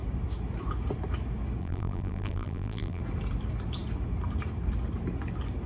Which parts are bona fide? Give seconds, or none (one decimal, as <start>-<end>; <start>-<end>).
0.0-1.6; 3.0-5.7